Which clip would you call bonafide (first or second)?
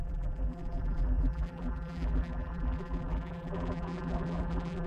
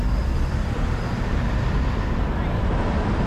second